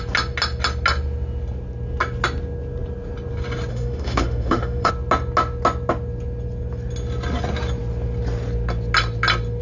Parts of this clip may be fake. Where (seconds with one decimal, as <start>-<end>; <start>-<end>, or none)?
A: 3.7-4.9